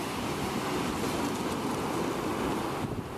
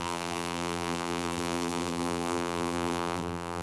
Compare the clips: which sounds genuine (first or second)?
first